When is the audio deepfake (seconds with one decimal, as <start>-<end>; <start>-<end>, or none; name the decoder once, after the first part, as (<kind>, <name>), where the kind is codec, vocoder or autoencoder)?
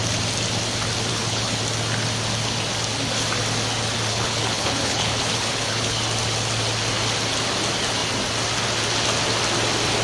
1.1-1.6 (codec, HILCodec); 4.1-6.0